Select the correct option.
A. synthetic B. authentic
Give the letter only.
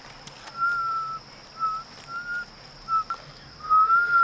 B